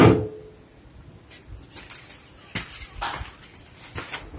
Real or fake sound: real